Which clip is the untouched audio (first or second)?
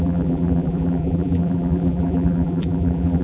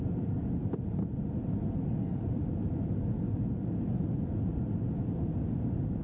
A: second